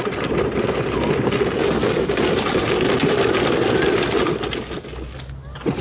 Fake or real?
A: real